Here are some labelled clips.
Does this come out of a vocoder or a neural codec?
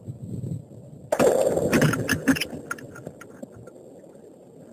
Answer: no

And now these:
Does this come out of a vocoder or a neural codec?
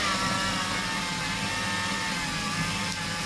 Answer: no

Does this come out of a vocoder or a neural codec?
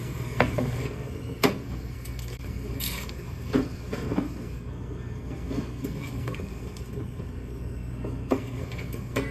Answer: yes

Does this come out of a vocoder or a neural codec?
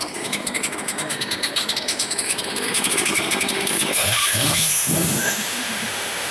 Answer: yes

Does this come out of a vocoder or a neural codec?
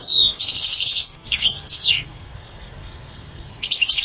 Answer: yes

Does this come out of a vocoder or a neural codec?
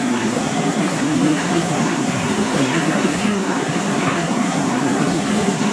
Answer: yes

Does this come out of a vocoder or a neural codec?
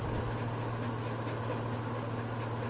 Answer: no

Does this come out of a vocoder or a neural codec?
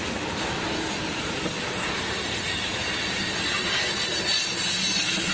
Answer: no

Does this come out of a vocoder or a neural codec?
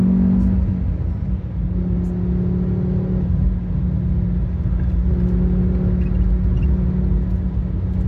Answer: no